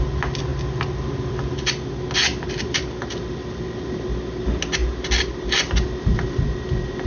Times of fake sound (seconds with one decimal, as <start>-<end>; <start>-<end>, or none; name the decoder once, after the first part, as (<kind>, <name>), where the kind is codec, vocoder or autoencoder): none